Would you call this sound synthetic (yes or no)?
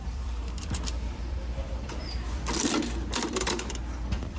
yes